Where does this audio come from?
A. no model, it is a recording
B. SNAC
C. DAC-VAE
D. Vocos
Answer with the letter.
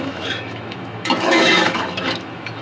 C